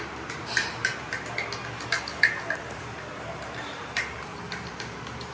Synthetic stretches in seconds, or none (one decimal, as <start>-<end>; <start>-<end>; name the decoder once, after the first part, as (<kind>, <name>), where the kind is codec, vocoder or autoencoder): 0.0-0.9 (vocoder, BigVGAN v2); 2.6-5.3